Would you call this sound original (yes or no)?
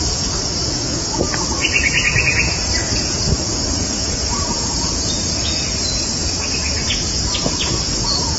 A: no